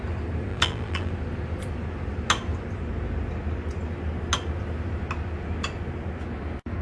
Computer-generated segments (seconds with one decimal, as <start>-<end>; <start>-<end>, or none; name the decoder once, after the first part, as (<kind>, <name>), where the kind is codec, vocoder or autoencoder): 0.5-1.1 (vocoder, BigVGAN v2)